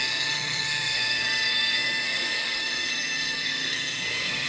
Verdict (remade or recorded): remade